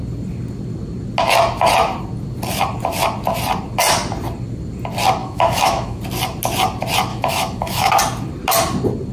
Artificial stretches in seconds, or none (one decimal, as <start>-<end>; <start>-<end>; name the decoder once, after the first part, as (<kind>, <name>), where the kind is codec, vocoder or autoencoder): 5.2-6.0 (autoencoder, DAC-VAE); 7.1-7.9